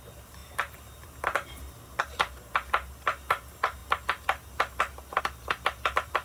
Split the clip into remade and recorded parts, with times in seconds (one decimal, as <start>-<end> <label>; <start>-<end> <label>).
0.0-6.2 recorded